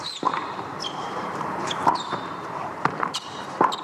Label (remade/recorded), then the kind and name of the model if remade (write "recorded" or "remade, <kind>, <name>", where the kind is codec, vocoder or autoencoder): remade, vocoder, BigVGAN v2